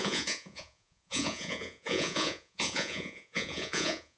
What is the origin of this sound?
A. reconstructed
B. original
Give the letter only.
A